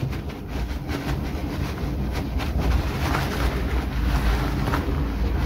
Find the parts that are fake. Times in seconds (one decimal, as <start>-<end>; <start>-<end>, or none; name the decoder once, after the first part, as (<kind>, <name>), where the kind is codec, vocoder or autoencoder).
none